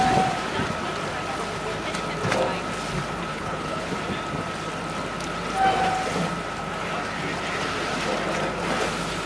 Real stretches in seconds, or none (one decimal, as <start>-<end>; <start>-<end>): 0.0-3.3; 3.9-9.3